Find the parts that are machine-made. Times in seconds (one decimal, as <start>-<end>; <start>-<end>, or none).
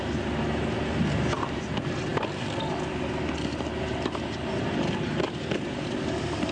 none